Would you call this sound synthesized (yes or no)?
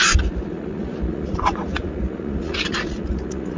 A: yes